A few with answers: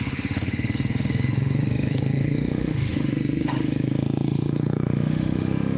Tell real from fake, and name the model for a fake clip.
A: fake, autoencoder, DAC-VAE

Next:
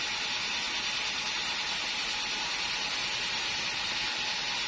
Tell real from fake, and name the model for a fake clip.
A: real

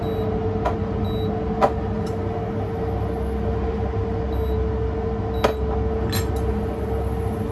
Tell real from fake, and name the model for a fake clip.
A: real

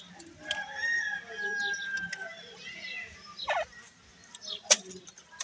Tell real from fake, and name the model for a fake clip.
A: real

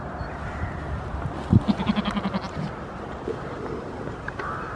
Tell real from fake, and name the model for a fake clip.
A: real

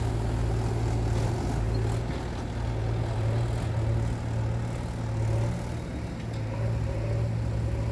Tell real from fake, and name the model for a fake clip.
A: real